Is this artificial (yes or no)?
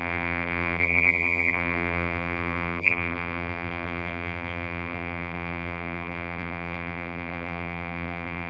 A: yes